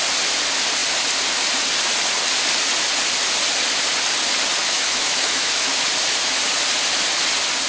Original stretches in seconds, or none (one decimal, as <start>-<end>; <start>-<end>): 0.0-4.6; 5.8-7.7